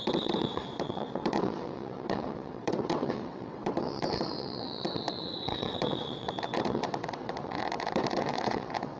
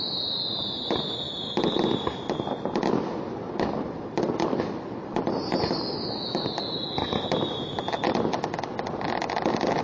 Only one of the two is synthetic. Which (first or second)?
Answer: first